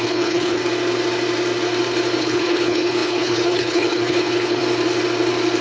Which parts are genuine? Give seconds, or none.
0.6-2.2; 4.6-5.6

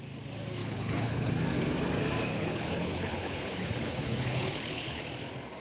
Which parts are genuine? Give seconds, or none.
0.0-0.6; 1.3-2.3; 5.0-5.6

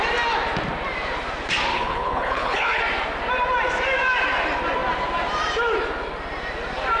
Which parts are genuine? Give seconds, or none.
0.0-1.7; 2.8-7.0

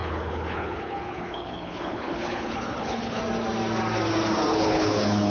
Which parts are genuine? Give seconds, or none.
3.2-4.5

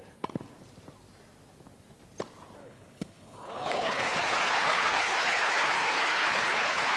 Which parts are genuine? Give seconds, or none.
0.0-2.6

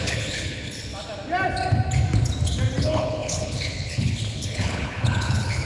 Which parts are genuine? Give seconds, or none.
0.9-2.8